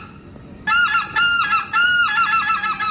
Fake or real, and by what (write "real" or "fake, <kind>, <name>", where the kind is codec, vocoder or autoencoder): real